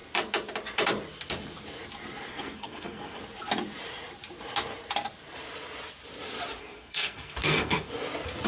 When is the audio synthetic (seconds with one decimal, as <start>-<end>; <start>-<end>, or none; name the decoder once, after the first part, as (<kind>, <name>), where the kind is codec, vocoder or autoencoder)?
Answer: 2.3-3.2 (codec, SNAC); 6.6-7.9